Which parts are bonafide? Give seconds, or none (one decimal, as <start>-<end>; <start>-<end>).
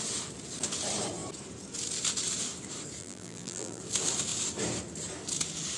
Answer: 0.0-3.0; 3.8-5.8